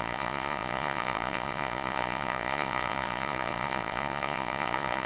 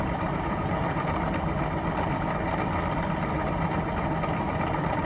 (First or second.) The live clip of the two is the second